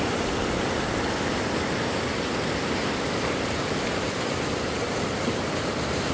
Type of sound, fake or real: real